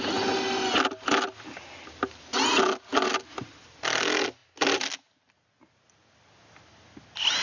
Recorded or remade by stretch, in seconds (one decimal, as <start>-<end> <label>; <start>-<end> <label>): 0.0-7.4 recorded